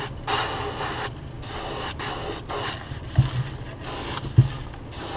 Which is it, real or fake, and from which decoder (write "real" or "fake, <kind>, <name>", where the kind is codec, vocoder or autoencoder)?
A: real